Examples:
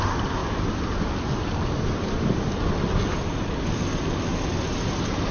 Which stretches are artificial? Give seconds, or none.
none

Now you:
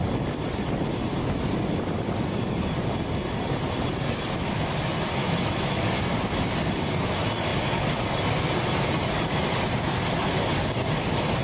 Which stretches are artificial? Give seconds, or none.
5.2-6.0 (autoencoder, DAC-VAE)